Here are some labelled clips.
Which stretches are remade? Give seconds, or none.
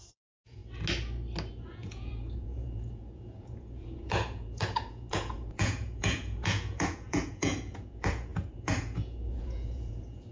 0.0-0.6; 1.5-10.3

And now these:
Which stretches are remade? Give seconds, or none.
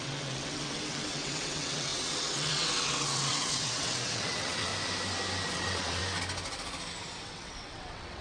0.0-4.7; 5.5-6.0; 7.2-8.2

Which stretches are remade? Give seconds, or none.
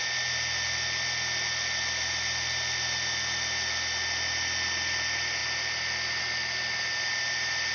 none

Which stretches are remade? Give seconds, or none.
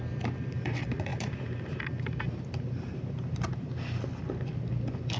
none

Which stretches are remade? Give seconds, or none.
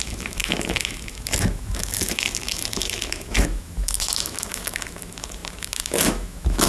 0.0-6.7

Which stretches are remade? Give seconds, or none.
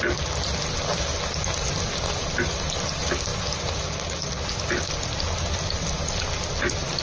none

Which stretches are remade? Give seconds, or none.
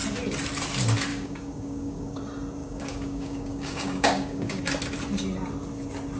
1.1-2.2; 2.6-4.6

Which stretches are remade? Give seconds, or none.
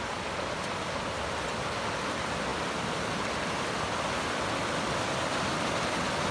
none